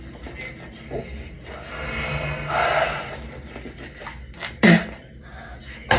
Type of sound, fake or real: real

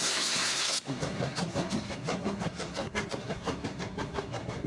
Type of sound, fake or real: fake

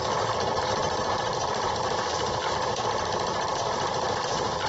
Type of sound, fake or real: fake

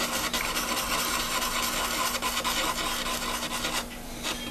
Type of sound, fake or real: real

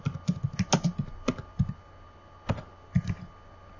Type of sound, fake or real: real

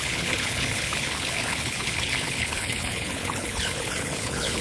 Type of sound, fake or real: fake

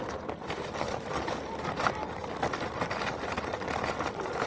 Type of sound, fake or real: real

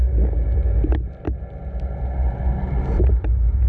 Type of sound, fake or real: real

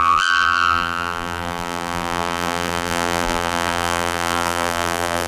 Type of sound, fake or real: fake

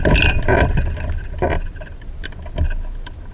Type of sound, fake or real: real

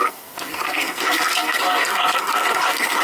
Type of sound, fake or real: fake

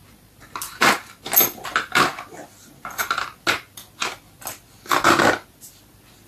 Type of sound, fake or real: real